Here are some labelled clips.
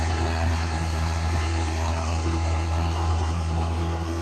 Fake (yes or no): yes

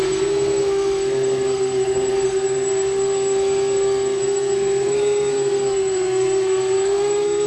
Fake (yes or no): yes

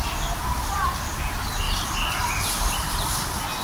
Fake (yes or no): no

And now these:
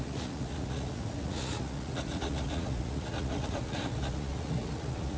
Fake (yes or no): yes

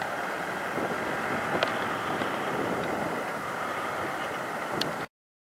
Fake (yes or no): no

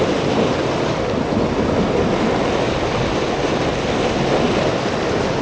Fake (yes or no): no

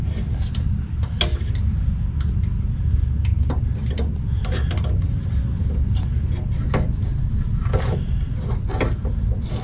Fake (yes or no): no